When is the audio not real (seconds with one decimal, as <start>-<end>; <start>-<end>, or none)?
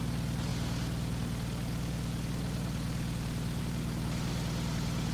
none